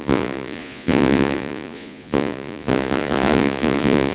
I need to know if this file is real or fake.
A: fake